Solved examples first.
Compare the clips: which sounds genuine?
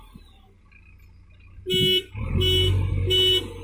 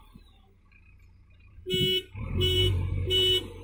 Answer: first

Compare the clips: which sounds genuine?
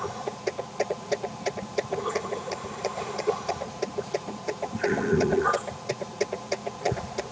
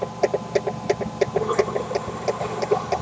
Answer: second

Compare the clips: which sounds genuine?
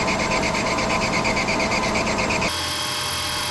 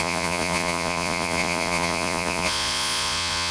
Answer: first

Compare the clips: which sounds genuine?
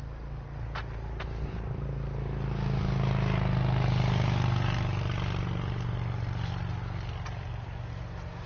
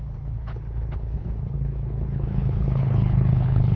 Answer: first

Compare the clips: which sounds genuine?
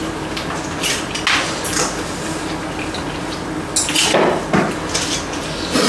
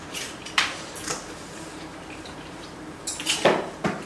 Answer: first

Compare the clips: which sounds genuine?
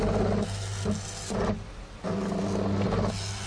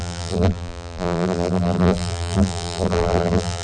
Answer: first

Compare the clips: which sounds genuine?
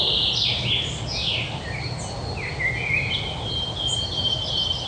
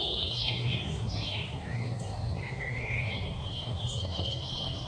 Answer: first